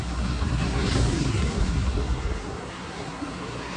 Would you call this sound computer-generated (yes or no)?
yes